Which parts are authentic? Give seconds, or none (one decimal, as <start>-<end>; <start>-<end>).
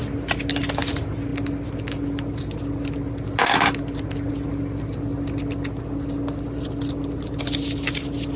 0.0-8.4